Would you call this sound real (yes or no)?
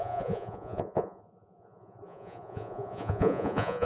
no